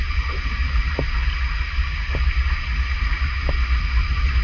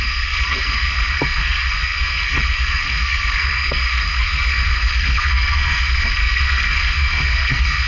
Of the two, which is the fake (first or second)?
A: second